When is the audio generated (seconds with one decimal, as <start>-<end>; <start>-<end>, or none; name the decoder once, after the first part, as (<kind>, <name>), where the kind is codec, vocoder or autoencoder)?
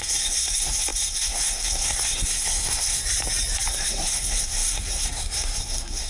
0.0-3.0 (codec, SNAC); 3.7-6.1